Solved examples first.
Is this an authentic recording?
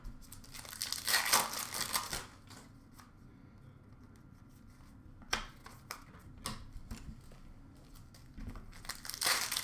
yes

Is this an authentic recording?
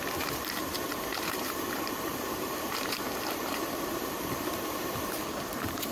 no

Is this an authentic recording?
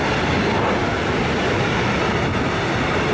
yes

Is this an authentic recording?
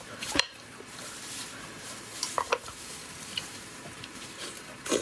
no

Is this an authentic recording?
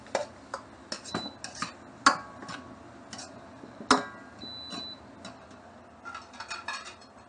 yes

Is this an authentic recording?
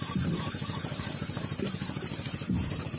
no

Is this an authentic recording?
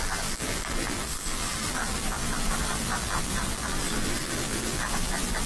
no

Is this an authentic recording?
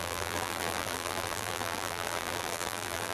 no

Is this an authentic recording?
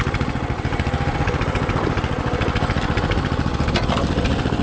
yes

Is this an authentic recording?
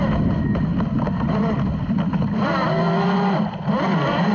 yes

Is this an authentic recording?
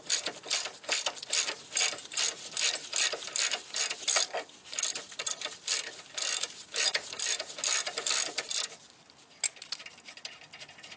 yes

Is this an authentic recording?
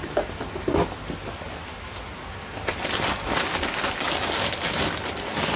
yes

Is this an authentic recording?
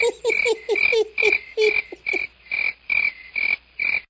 yes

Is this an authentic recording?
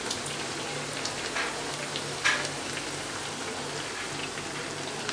yes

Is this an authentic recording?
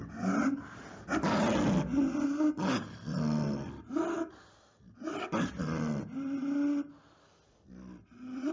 yes